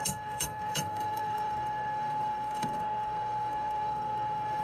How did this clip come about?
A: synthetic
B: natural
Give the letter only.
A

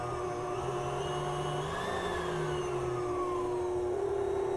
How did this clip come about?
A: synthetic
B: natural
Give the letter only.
B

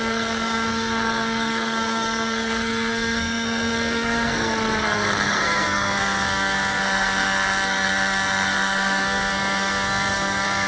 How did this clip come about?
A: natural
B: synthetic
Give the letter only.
B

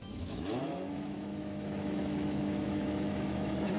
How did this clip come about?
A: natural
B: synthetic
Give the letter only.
B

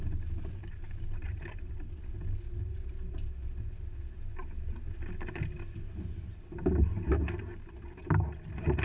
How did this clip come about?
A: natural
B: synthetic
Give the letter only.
A